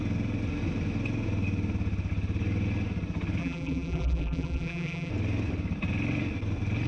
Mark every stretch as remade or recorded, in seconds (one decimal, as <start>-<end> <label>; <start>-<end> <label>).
0.0-3.4 recorded; 3.4-5.1 remade; 5.1-6.9 recorded